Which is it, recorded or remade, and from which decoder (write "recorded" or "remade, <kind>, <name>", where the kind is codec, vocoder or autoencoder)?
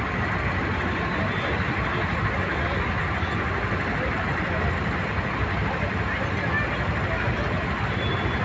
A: recorded